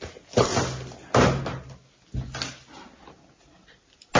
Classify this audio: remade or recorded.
recorded